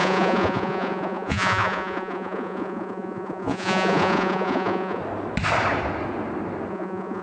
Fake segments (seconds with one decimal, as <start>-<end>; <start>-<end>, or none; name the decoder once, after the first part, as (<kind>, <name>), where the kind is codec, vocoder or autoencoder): 0.0-5.0 (vocoder, Vocos); 6.7-7.2